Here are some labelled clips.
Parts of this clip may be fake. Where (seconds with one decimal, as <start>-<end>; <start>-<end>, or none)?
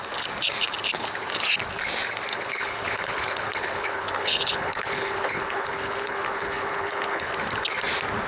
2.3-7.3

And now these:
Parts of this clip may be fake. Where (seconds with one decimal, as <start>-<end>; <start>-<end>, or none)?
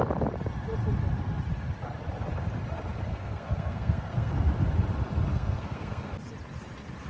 3.1-4.3; 5.3-6.1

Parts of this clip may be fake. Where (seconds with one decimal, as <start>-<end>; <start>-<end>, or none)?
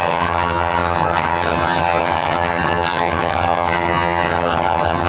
0.0-5.1